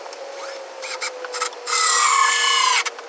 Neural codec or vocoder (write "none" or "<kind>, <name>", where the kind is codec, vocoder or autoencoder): none